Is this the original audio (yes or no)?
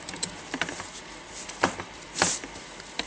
no